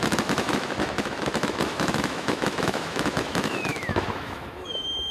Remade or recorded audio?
remade